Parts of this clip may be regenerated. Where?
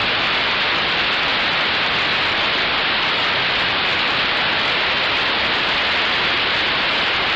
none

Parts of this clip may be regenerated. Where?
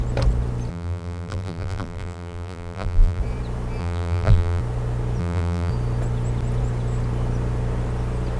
0.7-3.2 (vocoder, BigVGAN v2); 3.8-4.6; 5.2-5.7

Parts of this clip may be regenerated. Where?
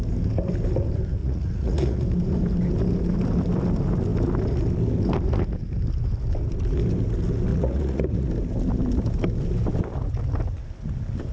1.2-2.0 (vocoder, Vocos); 7.5-8.3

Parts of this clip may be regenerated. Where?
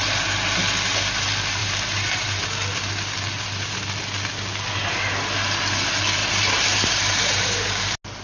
1.6-2.4 (vocoder, BigVGAN v2); 6.2-7.5